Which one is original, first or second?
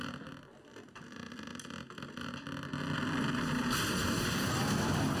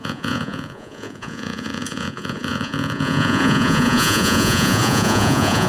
first